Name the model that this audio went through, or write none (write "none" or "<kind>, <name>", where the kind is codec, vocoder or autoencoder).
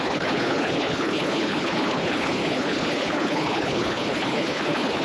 codec, HILCodec